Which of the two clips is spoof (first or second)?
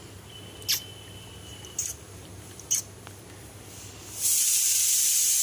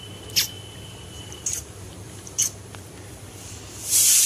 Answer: second